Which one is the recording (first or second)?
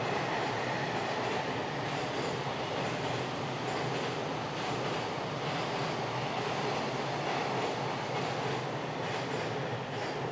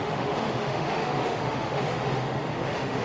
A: first